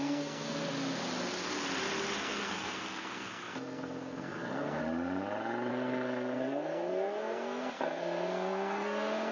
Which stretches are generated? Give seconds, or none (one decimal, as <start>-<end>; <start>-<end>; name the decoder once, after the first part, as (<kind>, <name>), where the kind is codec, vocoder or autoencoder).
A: 0.0-0.6 (codec, SNAC); 2.2-4.8; 5.7-9.3